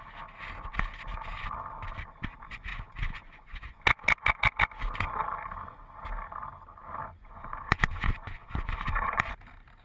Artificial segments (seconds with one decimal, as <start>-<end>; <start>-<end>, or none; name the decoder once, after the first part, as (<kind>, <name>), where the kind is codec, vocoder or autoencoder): 2.7-3.8 (vocoder, Vocos); 7.2-9.3